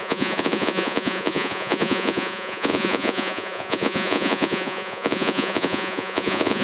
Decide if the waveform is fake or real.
fake